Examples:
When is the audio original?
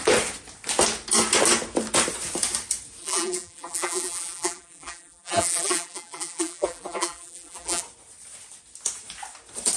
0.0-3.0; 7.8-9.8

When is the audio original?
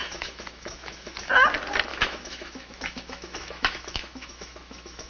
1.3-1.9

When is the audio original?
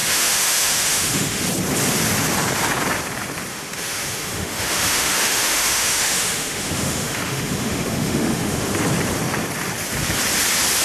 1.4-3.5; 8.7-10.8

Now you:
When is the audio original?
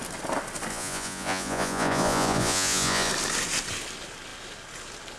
0.0-0.7; 3.1-5.2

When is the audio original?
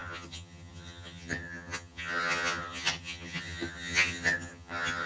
none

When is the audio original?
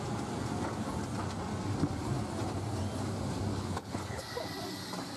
0.0-3.5; 4.2-5.2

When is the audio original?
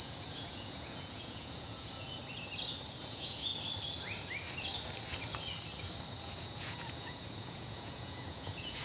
2.2-3.0; 3.5-6.1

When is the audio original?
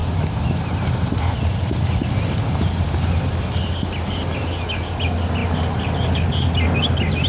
0.0-7.3